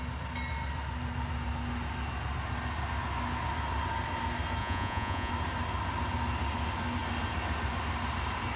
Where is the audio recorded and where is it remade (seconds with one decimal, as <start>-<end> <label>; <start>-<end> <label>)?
0.0-4.6 recorded; 4.6-5.3 remade; 5.3-8.6 recorded